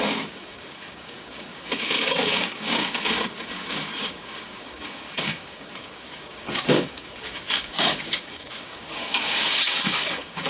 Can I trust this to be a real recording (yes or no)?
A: no